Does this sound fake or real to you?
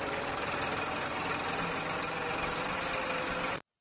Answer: real